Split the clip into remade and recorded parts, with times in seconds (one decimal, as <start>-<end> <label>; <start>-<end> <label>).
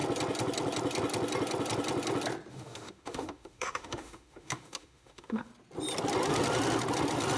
0.0-2.5 recorded; 2.5-5.5 remade; 5.5-7.4 recorded